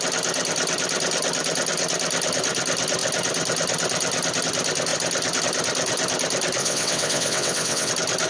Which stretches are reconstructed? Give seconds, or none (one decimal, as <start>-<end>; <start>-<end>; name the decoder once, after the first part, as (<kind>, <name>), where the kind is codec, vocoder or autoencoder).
6.6-7.9 (vocoder, WaveNeXt)